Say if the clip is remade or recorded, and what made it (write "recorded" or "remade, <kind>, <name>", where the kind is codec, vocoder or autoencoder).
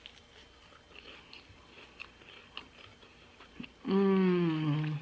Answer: recorded